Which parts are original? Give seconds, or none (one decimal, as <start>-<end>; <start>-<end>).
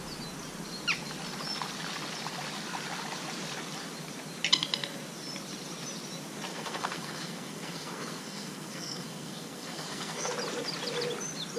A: 0.0-6.5; 10.3-11.6